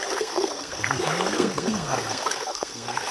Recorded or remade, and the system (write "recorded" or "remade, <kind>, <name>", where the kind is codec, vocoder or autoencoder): remade, codec, SNAC